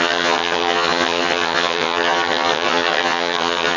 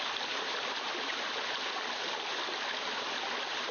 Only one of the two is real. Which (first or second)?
second